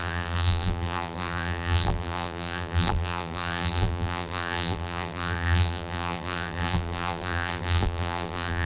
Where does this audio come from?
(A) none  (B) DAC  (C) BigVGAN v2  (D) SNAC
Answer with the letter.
C